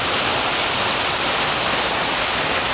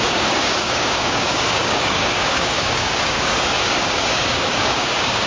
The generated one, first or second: second